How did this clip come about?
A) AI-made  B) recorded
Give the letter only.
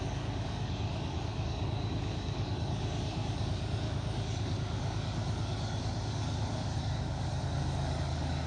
A